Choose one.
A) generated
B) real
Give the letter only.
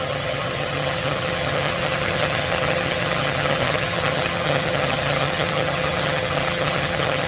A